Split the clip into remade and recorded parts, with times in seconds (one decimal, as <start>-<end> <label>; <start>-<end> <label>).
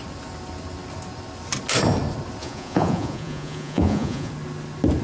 0.0-2.4 recorded; 2.4-4.3 remade; 4.3-5.0 recorded